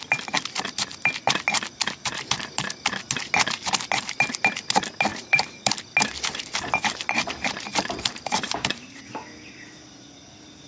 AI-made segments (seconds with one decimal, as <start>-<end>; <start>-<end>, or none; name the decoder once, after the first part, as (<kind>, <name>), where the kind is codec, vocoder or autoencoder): 5.1-5.7 (vocoder, BigVGAN v2); 7.7-9.0